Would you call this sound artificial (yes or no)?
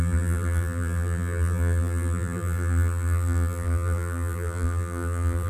yes